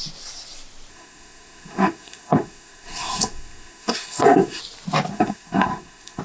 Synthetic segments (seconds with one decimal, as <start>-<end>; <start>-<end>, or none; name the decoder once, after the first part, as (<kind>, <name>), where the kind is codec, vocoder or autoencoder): 0.9-4.6 (codec, SNAC); 5.1-6.2